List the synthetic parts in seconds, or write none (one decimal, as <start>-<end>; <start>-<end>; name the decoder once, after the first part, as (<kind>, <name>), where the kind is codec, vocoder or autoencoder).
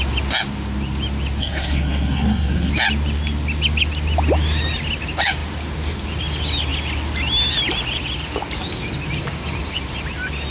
1.4-2.7 (codec, SNAC)